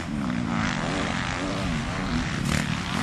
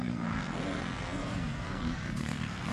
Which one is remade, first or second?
second